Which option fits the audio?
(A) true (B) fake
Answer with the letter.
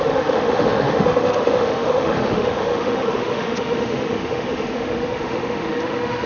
B